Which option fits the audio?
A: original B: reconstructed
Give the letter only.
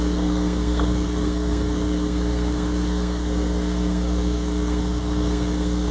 B